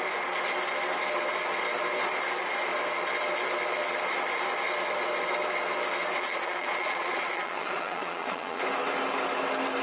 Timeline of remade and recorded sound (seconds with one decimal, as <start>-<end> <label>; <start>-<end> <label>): 0.0-6.2 recorded; 6.2-8.6 remade; 8.6-9.8 recorded